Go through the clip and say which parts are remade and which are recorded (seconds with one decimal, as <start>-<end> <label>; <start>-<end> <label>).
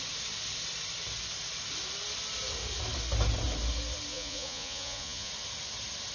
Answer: 0.0-4.1 recorded; 4.1-5.3 remade; 5.3-6.1 recorded